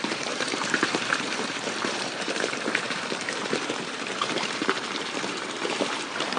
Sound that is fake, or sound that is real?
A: fake